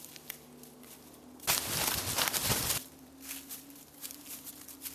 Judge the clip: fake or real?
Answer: real